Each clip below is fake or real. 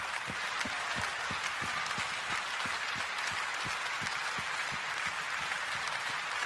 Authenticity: real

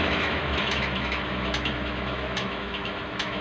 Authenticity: fake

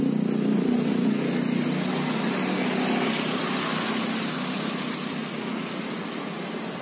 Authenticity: real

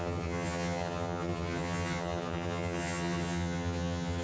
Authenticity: fake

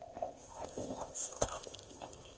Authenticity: fake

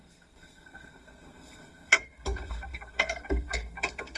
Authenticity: fake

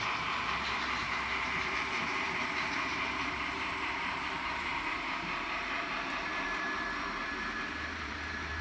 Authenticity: fake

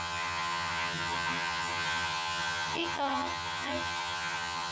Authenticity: fake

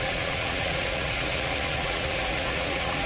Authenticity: fake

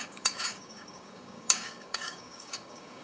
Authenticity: fake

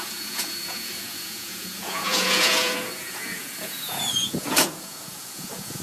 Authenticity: fake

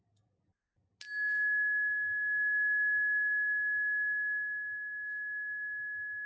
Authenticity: real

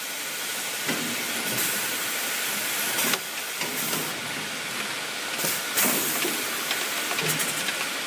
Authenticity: real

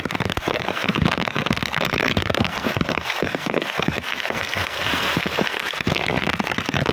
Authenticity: fake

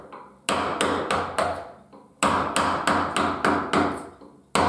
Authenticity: real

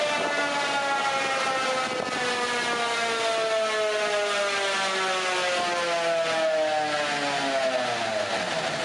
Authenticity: real